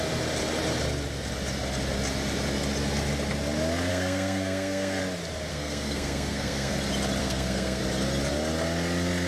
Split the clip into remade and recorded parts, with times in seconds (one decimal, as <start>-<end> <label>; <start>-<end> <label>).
0.0-3.9 recorded; 3.9-5.0 remade; 5.0-5.5 recorded; 5.5-6.7 remade; 6.7-7.2 recorded; 7.2-7.8 remade; 7.8-9.3 recorded